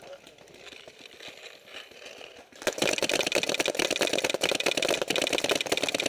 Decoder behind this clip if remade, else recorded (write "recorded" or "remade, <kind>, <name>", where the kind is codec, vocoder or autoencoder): recorded